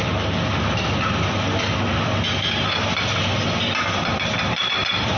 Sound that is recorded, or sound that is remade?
recorded